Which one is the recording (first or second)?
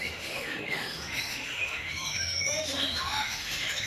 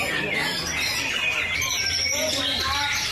second